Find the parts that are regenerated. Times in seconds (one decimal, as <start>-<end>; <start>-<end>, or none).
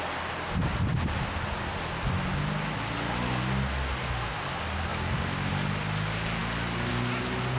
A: none